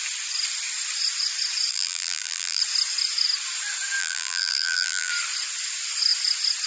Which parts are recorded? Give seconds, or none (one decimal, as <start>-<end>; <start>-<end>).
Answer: 0.0-1.7; 2.6-4.0; 5.1-6.7